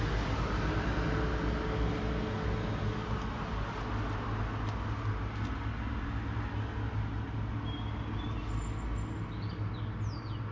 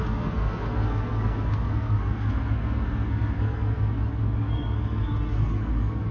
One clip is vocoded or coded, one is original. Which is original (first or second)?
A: first